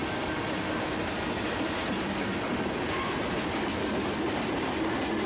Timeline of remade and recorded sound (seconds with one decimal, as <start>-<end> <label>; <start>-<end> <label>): 0.0-5.3 recorded